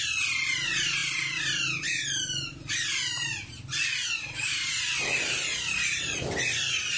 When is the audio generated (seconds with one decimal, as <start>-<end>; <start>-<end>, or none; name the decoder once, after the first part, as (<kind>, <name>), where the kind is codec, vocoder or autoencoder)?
none